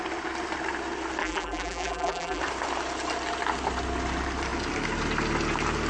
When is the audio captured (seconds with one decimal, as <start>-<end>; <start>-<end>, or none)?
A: 0.0-1.2; 2.4-5.9